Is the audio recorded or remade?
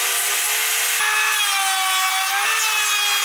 recorded